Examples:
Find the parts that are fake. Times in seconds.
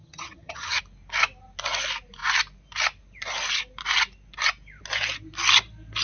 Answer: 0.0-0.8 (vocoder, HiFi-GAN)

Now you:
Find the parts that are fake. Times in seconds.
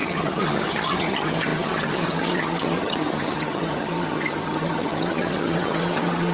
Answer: 0.0-6.3 (vocoder, HiFi-GAN)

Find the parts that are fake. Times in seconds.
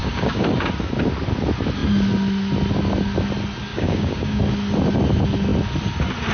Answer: 0.0-0.5 (codec, DAC); 3.7-4.4